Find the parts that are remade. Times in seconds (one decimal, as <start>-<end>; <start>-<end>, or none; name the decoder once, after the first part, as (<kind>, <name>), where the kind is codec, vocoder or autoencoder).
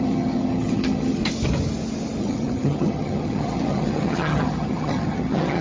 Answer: 0.0-1.2 (vocoder, HiFi-GAN); 2.2-5.6